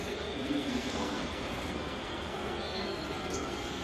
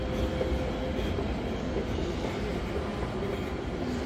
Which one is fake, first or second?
first